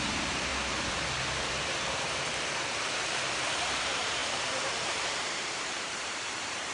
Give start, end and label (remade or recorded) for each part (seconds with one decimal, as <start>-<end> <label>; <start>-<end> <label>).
0.0-0.5 remade; 0.5-1.6 recorded; 1.6-6.7 remade